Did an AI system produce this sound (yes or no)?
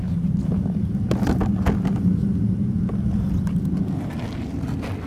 no